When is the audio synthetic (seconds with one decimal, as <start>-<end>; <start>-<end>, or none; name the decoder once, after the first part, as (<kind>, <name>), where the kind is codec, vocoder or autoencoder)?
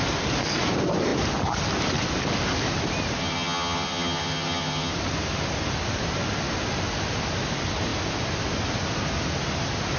3.2-4.9 (vocoder, HiFi-GAN)